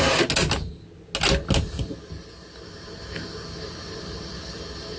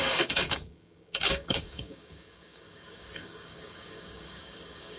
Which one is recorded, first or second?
first